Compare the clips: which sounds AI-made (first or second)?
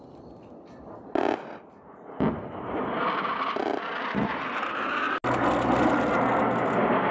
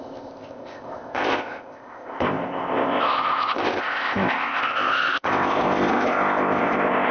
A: second